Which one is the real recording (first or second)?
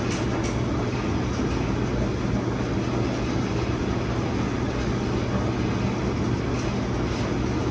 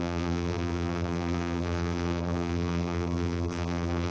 first